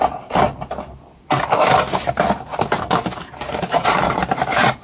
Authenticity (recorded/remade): recorded